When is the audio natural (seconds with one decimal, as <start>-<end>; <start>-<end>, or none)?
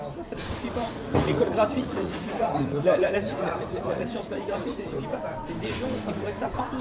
0.0-0.8; 4.9-6.8